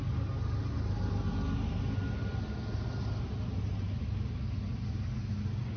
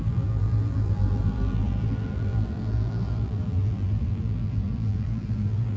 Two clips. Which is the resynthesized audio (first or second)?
second